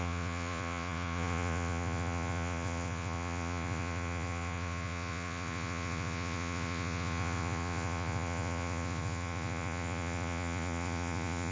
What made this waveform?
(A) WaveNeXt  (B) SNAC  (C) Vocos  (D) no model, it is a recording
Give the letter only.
C